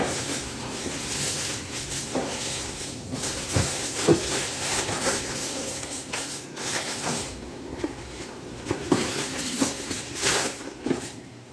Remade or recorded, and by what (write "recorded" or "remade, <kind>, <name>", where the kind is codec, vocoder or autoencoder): remade, codec, SNAC